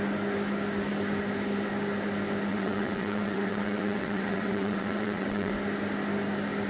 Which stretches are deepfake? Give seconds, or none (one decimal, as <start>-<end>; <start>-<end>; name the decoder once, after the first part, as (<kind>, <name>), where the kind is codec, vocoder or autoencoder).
2.5-5.5 (vocoder, WaveNeXt)